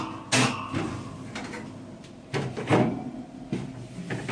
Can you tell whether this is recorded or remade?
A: recorded